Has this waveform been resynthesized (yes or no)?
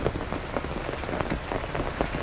no